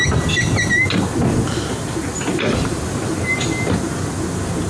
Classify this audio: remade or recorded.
recorded